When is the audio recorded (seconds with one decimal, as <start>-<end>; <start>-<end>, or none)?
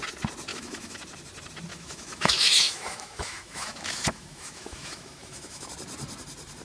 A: 0.0-0.5; 1.0-1.7; 5.7-6.6